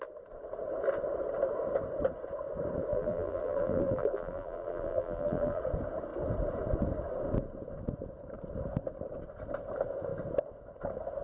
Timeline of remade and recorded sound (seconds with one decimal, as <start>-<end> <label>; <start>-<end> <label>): 0.0-2.9 recorded; 2.9-5.6 remade; 5.6-11.2 recorded